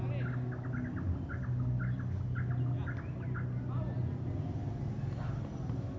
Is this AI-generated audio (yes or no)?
no